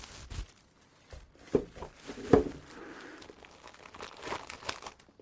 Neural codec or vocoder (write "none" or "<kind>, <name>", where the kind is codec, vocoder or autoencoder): none